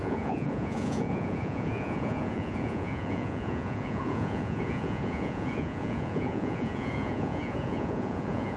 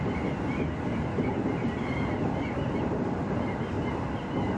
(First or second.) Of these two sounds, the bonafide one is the second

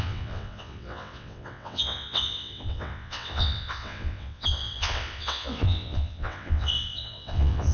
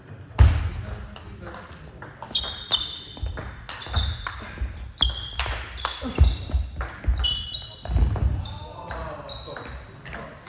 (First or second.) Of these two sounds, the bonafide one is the second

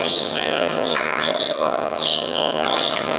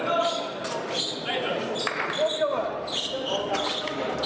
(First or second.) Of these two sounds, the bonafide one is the second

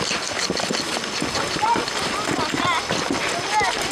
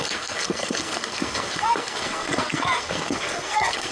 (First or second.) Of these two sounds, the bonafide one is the first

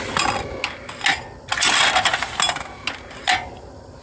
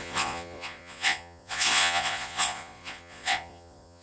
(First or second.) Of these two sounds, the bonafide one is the first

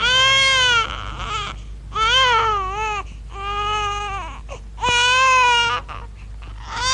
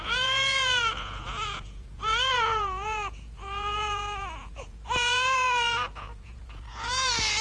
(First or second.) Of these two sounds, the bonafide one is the first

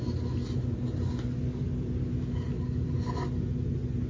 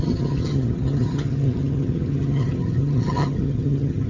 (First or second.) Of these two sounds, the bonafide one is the first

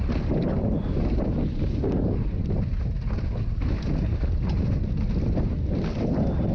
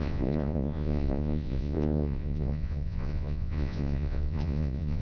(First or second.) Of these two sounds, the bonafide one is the first